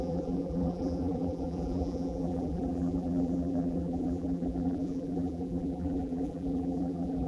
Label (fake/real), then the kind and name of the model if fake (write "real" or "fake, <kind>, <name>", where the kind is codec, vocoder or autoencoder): fake, vocoder, BigVGAN v2